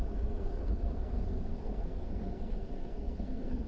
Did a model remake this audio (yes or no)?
yes